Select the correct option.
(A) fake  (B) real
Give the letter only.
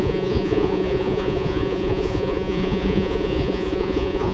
A